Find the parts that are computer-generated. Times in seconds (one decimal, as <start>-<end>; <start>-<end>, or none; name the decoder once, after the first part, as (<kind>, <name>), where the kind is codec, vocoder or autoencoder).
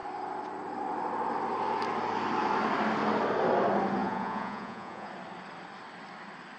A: 4.0-5.1 (vocoder, Vocos)